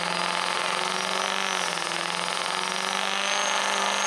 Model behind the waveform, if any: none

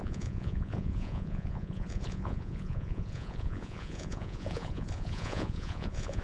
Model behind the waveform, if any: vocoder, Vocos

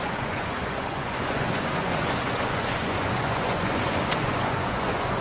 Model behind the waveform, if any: vocoder, Vocos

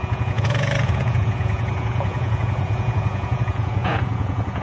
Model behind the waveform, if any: vocoder, Vocos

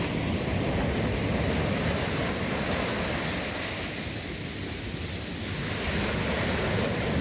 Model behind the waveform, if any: none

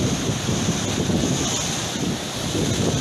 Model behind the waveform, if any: none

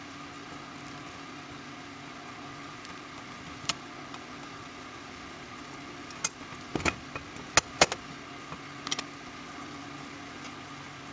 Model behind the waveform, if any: none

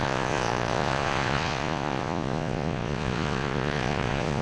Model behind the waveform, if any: vocoder, Vocos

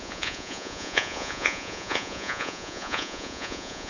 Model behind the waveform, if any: vocoder, Vocos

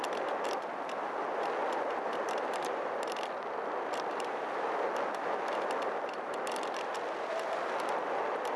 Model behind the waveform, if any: none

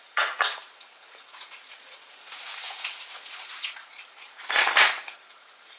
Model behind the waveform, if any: vocoder, Vocos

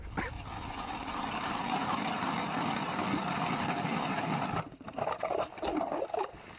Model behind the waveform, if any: none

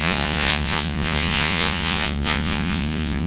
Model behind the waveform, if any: vocoder, Vocos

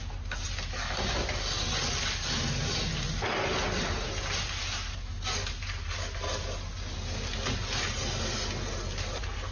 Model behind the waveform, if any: none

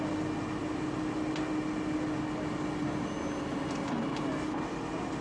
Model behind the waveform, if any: none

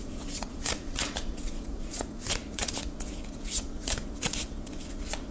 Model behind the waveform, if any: vocoder, Vocos